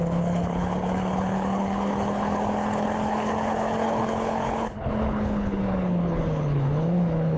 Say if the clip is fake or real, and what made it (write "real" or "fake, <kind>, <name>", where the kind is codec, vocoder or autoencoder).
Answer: fake, codec, HILCodec